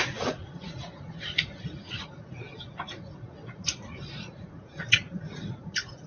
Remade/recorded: remade